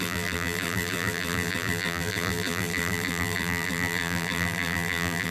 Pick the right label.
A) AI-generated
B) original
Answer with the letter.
A